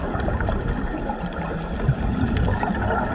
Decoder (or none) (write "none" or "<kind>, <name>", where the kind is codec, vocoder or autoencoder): none